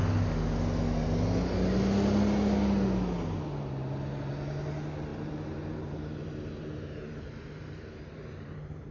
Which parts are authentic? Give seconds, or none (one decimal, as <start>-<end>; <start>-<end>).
0.0-5.1